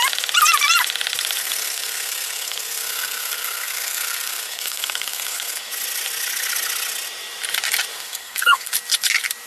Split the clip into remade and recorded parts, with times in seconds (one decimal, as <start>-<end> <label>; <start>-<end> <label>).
0.0-1.4 recorded; 1.4-5.7 remade; 5.7-7.9 recorded; 7.9-8.7 remade; 8.7-9.5 recorded